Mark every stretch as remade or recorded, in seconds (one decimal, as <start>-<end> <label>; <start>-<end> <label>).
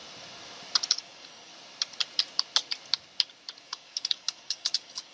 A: 0.0-0.9 recorded; 0.9-1.5 remade; 1.5-3.6 recorded; 3.6-5.1 remade